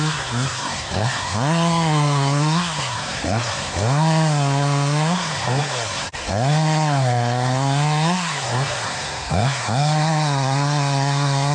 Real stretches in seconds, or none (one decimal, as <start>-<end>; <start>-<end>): none